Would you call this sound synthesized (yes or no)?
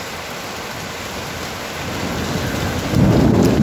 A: no